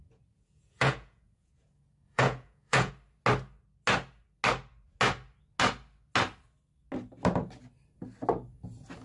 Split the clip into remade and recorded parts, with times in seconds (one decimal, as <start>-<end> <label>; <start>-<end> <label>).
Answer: 0.0-2.9 remade; 2.9-9.0 recorded